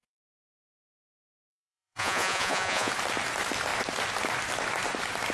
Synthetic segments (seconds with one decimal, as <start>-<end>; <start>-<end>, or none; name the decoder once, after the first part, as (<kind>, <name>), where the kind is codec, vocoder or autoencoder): 0.0-2.9 (vocoder, Vocos)

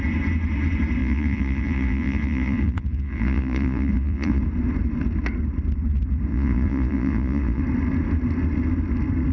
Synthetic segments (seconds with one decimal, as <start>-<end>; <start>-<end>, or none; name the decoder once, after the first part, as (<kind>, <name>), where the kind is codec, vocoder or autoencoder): 1.0-4.4 (vocoder, Vocos); 6.3-7.6

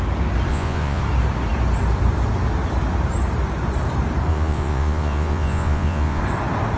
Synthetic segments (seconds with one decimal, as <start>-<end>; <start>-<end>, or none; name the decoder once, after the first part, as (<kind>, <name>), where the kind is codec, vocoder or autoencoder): 0.5-1.0 (vocoder, Vocos); 4.3-6.2

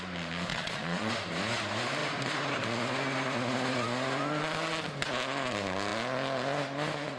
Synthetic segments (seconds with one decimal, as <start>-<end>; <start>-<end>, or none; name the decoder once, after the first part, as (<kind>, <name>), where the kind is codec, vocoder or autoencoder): 0.5-1.1 (vocoder, Vocos)

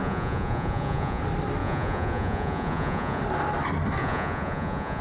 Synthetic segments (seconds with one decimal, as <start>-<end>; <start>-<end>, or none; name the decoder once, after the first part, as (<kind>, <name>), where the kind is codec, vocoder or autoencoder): 0.0-1.2 (vocoder, Vocos); 1.6-3.2; 4.0-5.0

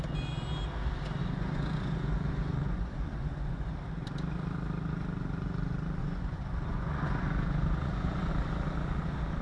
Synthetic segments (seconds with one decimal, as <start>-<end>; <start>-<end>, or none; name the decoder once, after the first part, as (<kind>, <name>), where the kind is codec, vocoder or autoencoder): 1.2-3.7 (vocoder, Vocos); 6.0-8.3

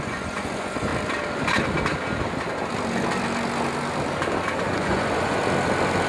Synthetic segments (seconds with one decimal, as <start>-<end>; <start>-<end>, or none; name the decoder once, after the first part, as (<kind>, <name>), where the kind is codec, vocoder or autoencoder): 0.0-0.9 (vocoder, Vocos); 4.6-5.4